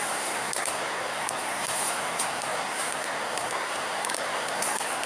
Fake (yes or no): yes